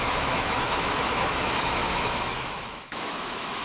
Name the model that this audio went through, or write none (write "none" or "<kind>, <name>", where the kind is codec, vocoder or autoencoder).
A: autoencoder, DAC-VAE